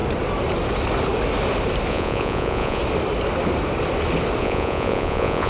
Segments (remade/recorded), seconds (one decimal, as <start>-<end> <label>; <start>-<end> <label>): 0.0-1.9 recorded; 1.9-2.8 remade; 2.8-4.4 recorded; 4.4-5.5 remade